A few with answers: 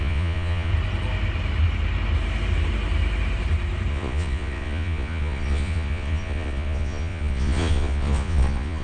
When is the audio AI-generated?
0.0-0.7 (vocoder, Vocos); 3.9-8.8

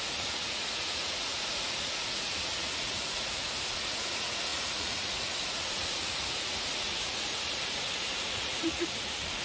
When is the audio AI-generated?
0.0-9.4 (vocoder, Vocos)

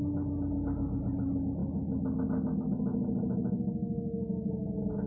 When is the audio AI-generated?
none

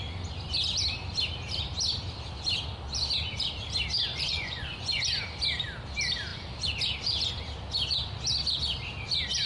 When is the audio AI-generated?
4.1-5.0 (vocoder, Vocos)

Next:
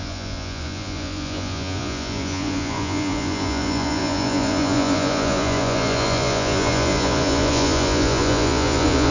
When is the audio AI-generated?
0.0-9.1 (vocoder, Vocos)